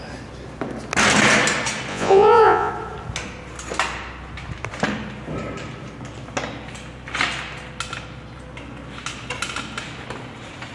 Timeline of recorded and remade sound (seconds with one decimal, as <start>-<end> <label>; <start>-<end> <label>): 0.0-1.9 recorded; 1.9-2.7 remade; 2.7-10.7 recorded